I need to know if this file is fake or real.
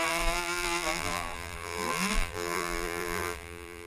fake